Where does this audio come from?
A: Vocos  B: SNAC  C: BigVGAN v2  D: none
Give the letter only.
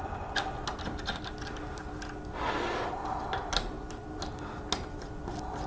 D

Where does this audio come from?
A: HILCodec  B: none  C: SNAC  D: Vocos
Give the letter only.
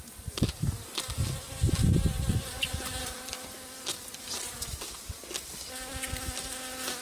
B